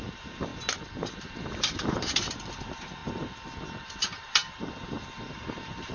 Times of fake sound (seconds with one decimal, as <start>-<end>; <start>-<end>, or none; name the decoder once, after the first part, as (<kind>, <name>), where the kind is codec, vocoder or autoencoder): 0.0-0.5 (vocoder, BigVGAN v2); 1.3-3.0; 3.8-5.9